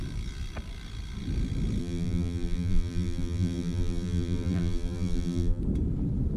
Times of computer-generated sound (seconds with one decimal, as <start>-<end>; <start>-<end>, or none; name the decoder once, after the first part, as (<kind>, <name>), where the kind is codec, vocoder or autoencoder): 1.8-5.6 (vocoder, BigVGAN v2)